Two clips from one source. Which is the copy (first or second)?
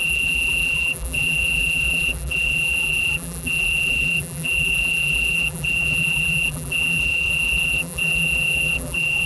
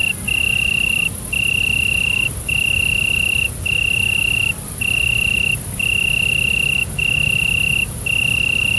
first